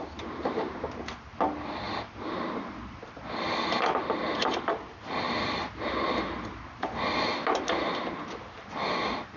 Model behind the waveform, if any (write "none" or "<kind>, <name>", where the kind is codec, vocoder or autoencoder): none